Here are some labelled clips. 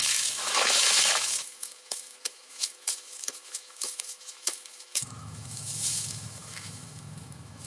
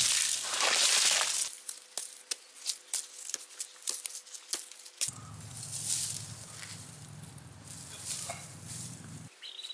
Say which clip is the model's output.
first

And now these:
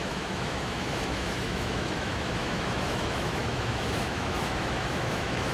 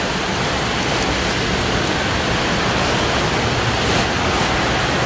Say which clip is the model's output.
first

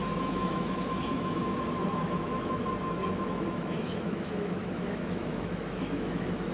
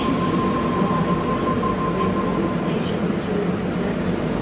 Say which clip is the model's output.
first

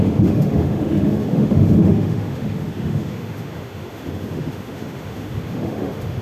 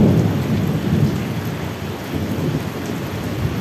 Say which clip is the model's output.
first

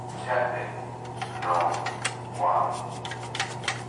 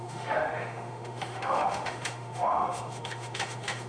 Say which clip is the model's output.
second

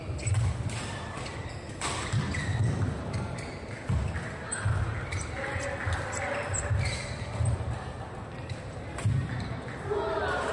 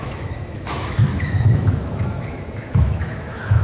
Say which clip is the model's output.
second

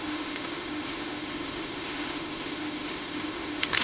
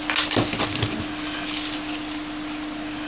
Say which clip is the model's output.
first